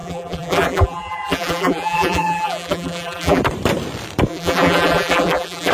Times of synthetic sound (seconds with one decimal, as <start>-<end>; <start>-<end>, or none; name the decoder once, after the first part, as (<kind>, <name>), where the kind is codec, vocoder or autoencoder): 0.0-3.4 (vocoder, BigVGAN v2); 4.3-5.7